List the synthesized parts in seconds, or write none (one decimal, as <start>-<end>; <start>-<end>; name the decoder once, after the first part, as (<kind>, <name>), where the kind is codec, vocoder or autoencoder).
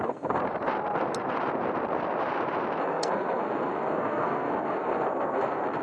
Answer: 0.0-0.4 (codec, SNAC); 2.8-5.8